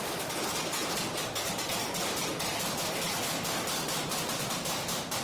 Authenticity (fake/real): real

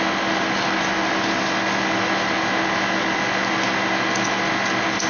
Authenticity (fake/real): real